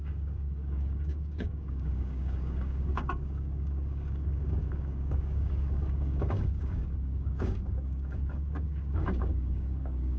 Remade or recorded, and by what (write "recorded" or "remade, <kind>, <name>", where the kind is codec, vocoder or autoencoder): remade, codec, DAC